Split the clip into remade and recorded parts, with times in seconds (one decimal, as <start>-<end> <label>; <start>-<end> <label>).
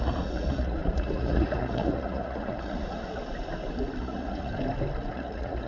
0.0-3.2 remade; 3.2-4.0 recorded; 4.0-4.5 remade; 4.5-5.1 recorded; 5.1-5.7 remade